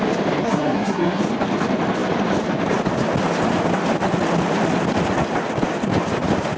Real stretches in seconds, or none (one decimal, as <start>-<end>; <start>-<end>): 0.0-0.4; 1.2-6.6